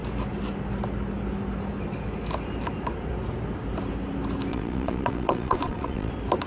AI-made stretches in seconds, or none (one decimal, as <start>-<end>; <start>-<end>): 4.5-6.1